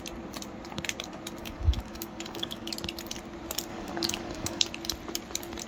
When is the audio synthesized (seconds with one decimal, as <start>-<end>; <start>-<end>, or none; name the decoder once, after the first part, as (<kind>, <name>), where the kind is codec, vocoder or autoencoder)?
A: 1.4-2.7 (codec, DAC); 3.7-4.6